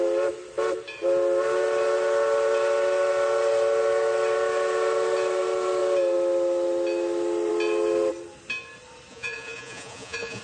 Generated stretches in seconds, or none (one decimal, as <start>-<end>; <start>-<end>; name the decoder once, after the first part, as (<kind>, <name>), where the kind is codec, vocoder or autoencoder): 9.1-10.4 (vocoder, Vocos)